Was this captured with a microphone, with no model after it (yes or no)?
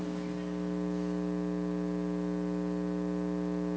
yes